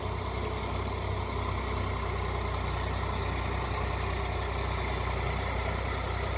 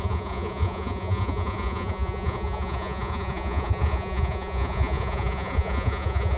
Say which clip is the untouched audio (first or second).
first